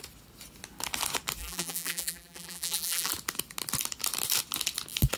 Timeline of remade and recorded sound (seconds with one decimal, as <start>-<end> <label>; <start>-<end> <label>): 0.0-1.4 recorded; 1.4-3.1 remade; 3.1-5.2 recorded